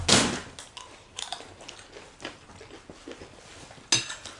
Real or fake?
real